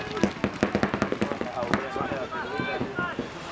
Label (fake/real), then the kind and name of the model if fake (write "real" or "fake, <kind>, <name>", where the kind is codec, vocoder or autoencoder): real